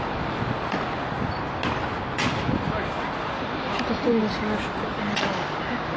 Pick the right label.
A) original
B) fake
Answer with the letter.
A